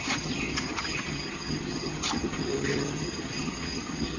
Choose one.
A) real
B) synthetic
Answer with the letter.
B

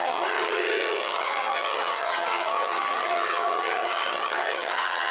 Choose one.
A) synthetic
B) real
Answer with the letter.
A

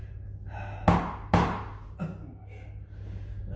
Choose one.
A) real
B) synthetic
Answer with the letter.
A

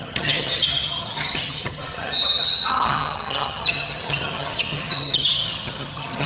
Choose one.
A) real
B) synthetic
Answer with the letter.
B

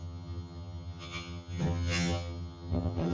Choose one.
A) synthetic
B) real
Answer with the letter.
A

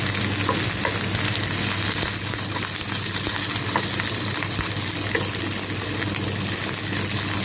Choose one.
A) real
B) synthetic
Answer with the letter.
A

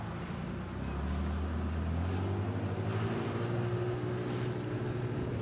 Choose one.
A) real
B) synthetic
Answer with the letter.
A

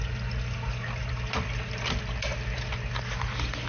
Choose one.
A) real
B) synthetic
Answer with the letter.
A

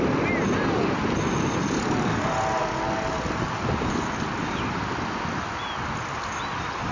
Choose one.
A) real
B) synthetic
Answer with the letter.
A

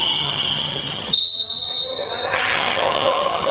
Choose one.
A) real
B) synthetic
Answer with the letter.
B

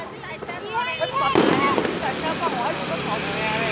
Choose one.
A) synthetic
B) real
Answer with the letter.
B